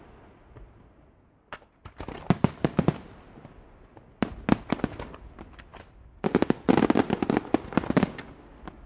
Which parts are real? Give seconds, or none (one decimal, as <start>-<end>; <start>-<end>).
0.0-8.9